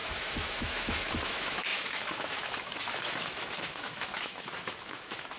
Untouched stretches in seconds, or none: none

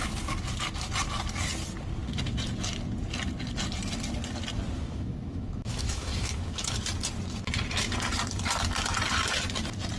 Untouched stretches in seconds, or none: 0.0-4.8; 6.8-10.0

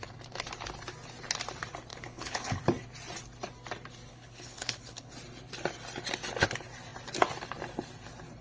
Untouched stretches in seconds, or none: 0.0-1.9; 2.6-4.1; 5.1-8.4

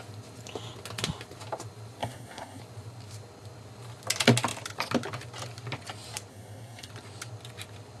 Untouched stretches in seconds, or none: 0.0-2.0; 2.6-6.3; 6.9-8.0

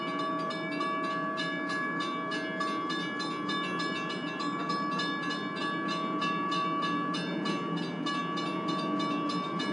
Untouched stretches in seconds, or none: 0.0-9.7